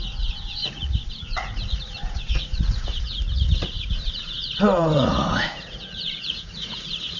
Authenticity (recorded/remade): remade